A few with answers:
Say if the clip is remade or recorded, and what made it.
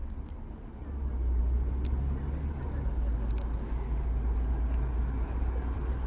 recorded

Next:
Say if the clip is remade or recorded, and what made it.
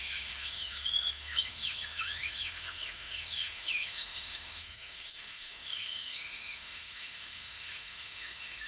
remade, autoencoder, DAC-VAE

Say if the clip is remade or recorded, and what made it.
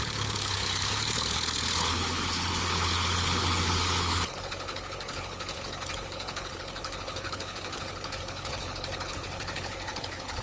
remade, codec, HILCodec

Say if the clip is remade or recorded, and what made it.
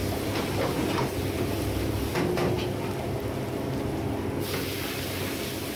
recorded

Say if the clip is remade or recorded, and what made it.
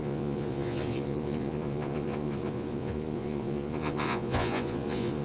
remade, vocoder, Vocos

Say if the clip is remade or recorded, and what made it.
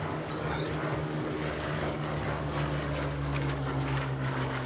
remade, codec, DAC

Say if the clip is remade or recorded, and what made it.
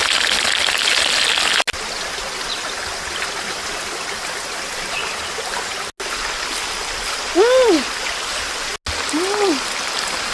recorded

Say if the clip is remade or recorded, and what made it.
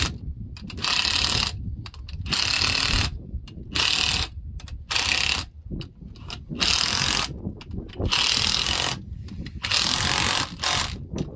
recorded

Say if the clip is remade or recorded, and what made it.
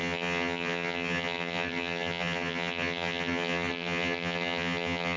remade, vocoder, HiFi-GAN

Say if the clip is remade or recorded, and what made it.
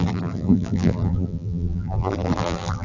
remade, vocoder, BigVGAN v2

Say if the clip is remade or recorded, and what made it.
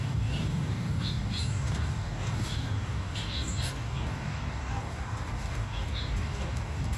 remade, codec, DAC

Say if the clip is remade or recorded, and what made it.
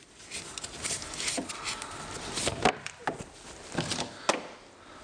recorded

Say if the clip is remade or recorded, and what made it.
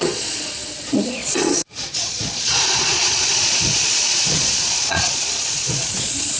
remade, vocoder, Vocos